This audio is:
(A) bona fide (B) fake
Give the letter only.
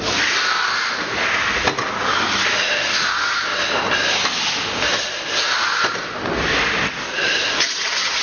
A